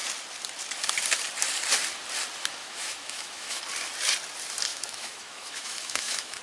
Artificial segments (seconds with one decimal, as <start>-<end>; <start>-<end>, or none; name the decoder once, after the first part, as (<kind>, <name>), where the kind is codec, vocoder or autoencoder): 2.6-3.6 (autoencoder, DAC-VAE); 4.7-6.4